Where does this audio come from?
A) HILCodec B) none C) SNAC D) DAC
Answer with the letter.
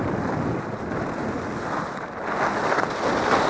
B